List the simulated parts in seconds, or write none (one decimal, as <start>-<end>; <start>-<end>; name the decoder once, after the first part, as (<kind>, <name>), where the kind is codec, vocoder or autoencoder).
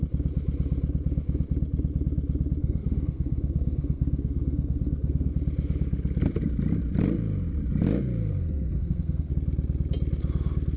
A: 2.6-5.3 (codec, SNAC); 8.2-9.3